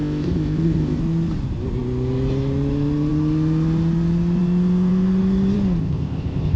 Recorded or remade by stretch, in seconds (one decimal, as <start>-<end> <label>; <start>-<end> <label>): 0.0-1.0 remade; 1.0-5.8 recorded; 5.8-6.6 remade